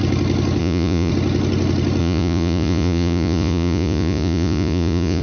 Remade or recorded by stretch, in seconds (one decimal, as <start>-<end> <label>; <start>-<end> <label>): 0.0-0.6 recorded; 0.6-1.1 remade; 1.1-2.0 recorded; 2.0-5.2 remade